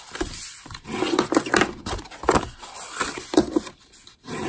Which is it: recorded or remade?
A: recorded